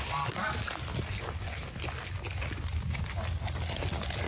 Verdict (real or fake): real